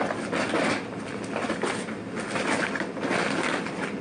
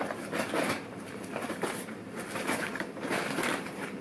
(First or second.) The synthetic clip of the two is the second